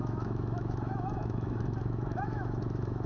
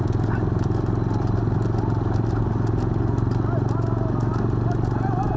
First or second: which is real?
second